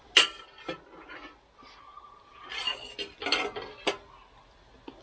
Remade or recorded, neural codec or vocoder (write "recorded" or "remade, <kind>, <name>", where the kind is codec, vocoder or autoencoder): recorded